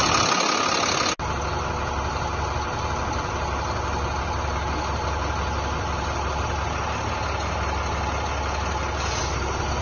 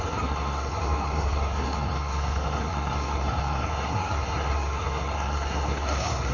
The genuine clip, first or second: first